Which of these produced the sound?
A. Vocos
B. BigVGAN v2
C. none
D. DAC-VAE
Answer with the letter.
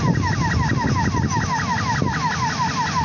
C